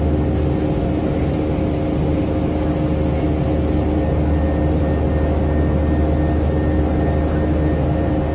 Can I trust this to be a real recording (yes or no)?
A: yes